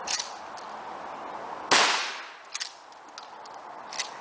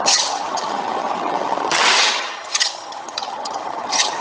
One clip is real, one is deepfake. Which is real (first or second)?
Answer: first